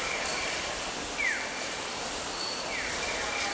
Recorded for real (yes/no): yes